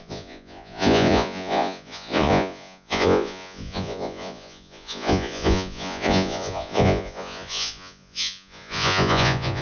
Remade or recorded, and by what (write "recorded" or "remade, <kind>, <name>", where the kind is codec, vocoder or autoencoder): remade, vocoder, Vocos